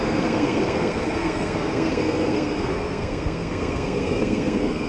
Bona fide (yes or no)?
no